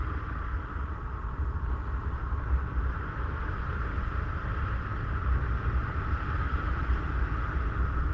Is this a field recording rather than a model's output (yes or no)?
yes